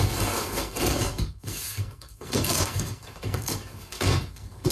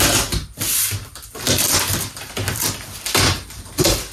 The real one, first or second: second